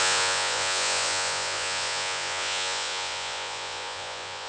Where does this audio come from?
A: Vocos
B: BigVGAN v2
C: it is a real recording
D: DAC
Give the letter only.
A